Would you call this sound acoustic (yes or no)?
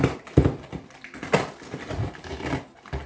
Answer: yes